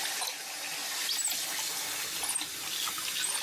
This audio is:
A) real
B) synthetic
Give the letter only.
A